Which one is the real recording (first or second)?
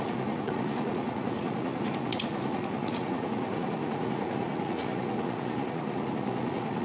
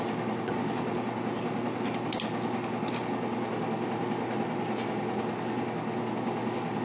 second